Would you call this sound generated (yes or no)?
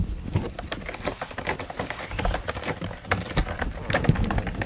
no